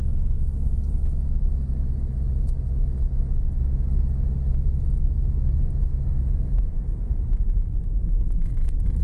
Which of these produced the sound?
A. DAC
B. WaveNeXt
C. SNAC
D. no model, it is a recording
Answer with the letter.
D